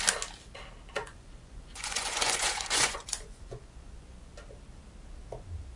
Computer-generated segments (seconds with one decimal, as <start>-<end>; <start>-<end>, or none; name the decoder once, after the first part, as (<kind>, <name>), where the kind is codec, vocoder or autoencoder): 1.0-4.3 (vocoder, Vocos)